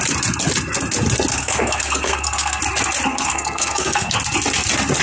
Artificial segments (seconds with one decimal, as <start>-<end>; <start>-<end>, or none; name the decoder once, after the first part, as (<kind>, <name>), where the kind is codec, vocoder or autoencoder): 1.3-2.6 (codec, SNAC); 3.1-4.1